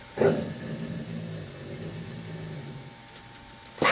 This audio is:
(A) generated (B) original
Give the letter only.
B